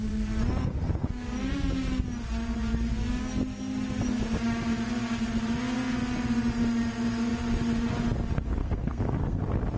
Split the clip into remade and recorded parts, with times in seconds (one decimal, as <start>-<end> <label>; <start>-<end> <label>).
0.0-0.6 recorded; 0.6-1.1 remade; 1.1-8.6 recorded; 8.6-9.4 remade; 9.4-9.8 recorded